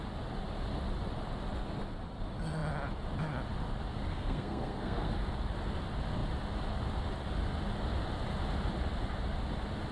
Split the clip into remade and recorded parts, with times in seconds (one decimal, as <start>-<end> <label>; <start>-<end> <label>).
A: 0.0-4.1 recorded; 4.1-5.1 remade; 5.1-9.9 recorded